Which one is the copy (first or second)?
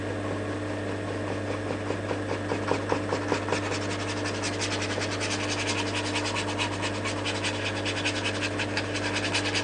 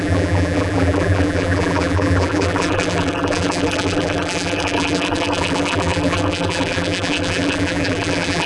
second